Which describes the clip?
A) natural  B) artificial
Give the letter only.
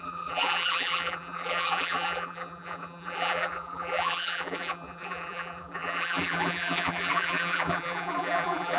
B